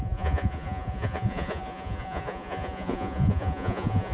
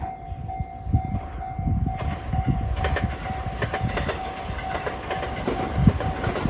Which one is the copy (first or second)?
first